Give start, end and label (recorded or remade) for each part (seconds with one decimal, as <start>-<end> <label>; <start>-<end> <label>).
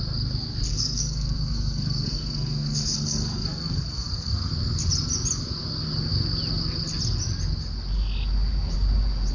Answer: 0.0-0.7 recorded; 0.7-4.5 remade; 4.5-9.3 recorded